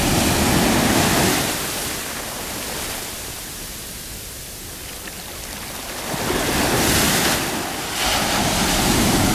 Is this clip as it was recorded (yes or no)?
yes